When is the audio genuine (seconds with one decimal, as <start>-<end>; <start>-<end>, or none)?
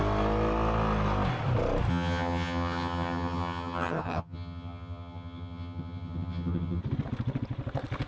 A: 0.0-1.9; 6.8-8.1